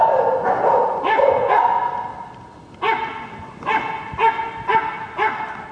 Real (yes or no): yes